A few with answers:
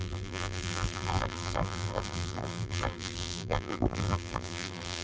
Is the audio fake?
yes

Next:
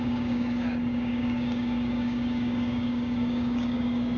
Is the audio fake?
yes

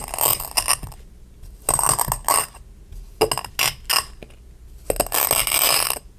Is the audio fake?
no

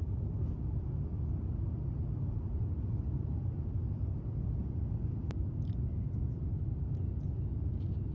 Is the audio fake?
no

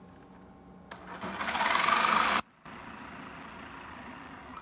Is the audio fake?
no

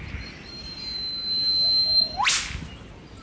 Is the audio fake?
no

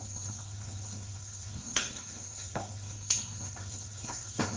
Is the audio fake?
yes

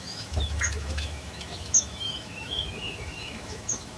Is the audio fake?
yes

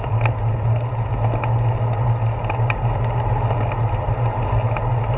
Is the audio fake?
no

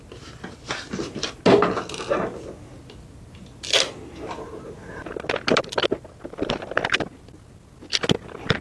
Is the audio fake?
no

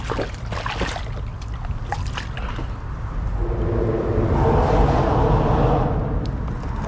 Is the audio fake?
no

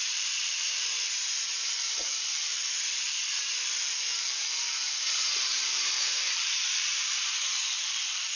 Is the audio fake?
yes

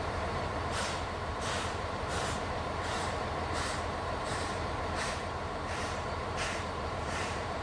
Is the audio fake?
yes